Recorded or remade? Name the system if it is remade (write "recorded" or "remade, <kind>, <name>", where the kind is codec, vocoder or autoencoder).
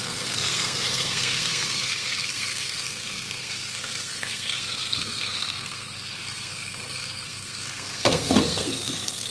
remade, codec, SNAC